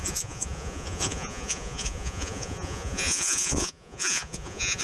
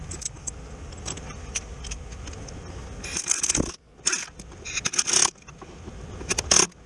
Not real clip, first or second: first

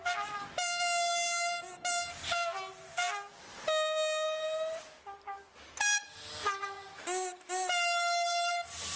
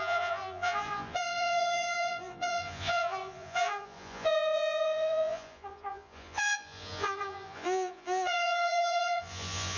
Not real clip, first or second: second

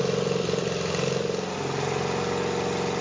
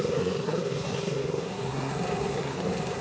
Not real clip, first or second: second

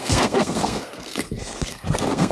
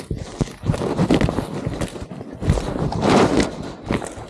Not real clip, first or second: first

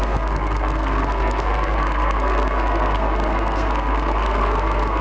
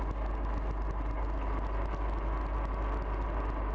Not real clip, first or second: first